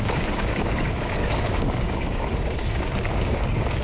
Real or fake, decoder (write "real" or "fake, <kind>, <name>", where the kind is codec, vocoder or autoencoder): fake, codec, DAC